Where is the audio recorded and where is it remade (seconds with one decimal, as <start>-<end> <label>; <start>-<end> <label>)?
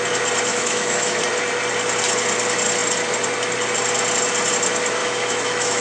0.0-0.5 recorded; 0.5-1.2 remade; 1.2-5.0 recorded; 5.0-5.8 remade